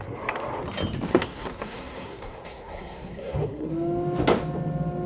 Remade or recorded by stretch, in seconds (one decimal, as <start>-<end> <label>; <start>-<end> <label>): 0.0-1.1 recorded; 1.1-3.7 remade; 3.7-5.1 recorded